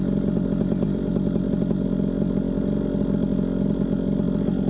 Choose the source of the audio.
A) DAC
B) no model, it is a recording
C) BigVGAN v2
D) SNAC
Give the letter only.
B